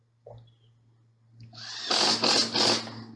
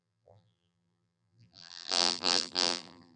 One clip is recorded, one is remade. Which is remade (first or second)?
second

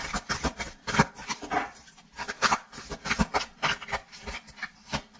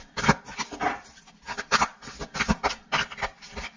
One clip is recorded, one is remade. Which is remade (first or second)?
first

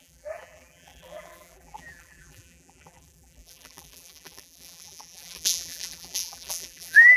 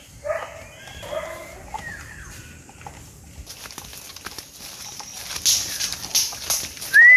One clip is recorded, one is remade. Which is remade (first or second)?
first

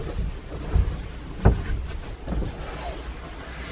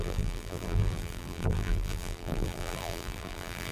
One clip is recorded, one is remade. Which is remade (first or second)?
second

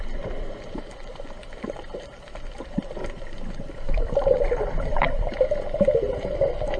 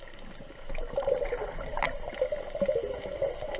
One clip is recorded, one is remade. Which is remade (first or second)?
first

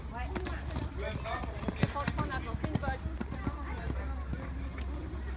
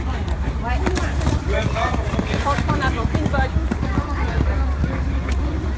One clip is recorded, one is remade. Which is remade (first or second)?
second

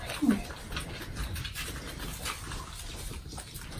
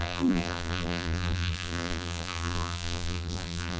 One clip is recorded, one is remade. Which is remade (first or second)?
second